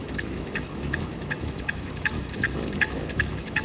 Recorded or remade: remade